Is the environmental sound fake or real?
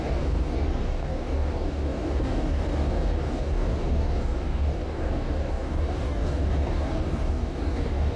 fake